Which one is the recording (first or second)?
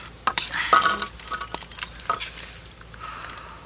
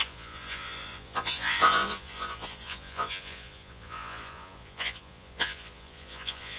first